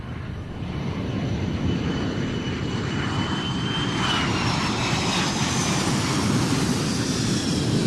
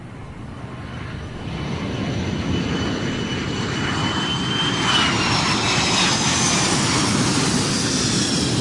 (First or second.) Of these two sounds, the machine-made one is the first